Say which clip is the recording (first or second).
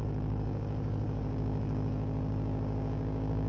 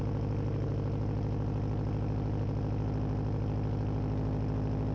second